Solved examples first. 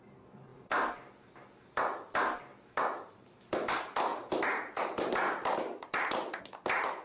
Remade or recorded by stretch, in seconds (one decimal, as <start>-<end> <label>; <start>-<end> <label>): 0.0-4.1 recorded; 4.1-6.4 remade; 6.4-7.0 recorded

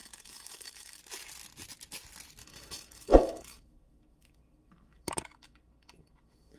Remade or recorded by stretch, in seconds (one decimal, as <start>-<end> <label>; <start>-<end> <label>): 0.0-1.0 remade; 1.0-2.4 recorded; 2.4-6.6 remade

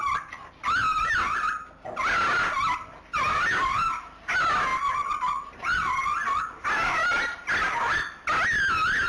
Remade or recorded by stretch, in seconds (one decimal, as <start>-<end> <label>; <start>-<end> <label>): 0.0-9.1 recorded